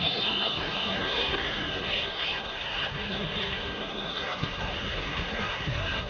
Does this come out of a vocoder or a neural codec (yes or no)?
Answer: yes